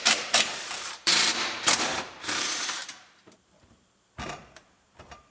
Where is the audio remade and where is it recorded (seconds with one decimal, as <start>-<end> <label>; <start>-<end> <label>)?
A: 0.0-1.1 remade; 1.1-2.2 recorded; 2.2-5.3 remade